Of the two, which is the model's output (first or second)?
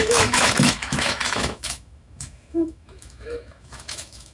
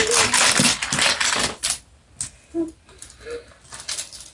first